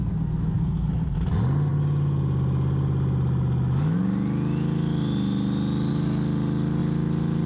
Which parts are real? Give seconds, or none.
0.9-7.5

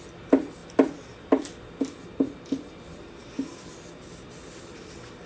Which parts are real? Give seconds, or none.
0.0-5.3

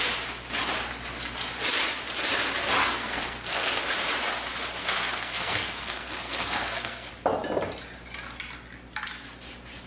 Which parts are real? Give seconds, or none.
0.0-2.8; 3.8-4.8; 7.1-9.9

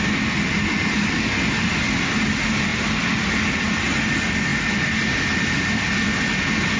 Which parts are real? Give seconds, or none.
0.0-6.8

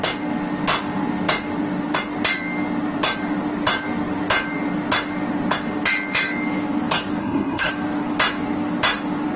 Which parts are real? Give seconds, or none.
0.0-7.2; 7.7-9.4

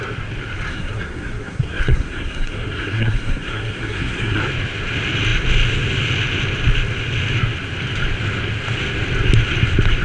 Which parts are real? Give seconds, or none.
0.0-0.7; 4.4-10.0

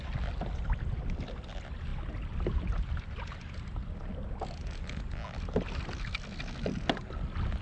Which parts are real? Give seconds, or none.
0.0-7.6

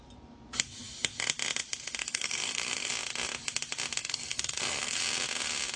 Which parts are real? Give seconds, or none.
0.0-2.0; 2.9-4.0; 5.0-5.8